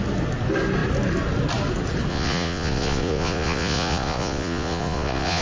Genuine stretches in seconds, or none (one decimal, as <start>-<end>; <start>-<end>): 0.0-2.1